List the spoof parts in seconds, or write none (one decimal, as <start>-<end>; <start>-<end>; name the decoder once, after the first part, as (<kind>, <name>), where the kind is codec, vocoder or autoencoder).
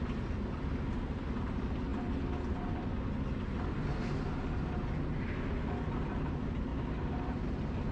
6.7-7.2 (vocoder, BigVGAN v2)